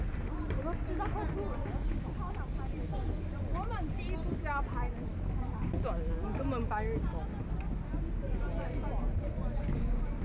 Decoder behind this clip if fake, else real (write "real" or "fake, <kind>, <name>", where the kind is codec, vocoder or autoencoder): real